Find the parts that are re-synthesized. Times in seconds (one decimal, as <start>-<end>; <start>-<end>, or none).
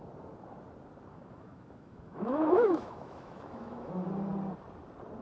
1.1-3.9